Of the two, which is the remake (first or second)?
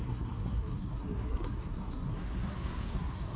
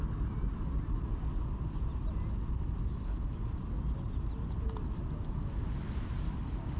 first